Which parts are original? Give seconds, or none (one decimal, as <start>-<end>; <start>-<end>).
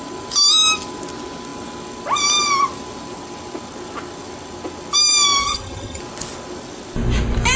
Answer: 0.0-5.4; 6.0-7.6